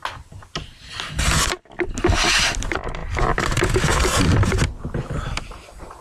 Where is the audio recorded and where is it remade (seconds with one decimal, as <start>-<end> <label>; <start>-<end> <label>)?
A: 0.0-6.0 recorded